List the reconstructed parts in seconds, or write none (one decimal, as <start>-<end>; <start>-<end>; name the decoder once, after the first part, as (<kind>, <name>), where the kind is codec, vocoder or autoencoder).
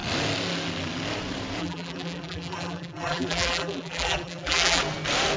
1.6-4.8 (vocoder, BigVGAN v2)